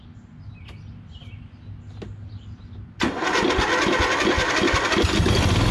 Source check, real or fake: real